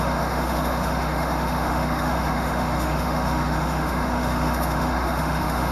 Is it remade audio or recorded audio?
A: remade